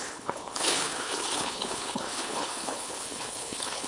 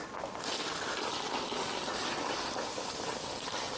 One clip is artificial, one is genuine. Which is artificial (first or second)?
first